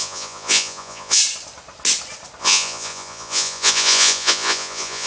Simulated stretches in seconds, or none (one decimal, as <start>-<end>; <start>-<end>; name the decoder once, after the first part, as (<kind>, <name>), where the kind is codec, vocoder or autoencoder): 0.0-1.2 (vocoder, Vocos); 2.4-5.1